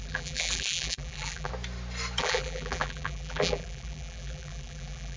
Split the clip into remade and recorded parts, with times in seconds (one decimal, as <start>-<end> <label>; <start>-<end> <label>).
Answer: 0.0-1.5 remade; 1.5-2.2 recorded; 2.2-5.2 remade